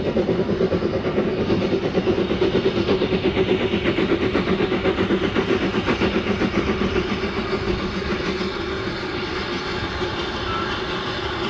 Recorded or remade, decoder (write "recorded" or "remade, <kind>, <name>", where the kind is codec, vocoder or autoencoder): recorded